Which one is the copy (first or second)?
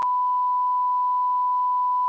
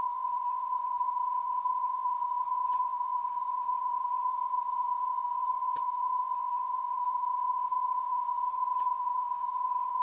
second